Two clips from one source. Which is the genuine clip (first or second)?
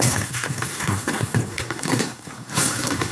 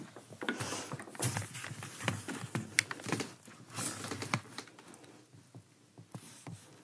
second